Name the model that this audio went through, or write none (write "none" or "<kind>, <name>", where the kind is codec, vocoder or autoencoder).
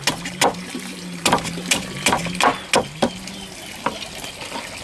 none